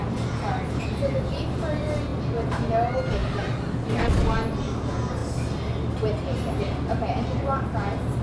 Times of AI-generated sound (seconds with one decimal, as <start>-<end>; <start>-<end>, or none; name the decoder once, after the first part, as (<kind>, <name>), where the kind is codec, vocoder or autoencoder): none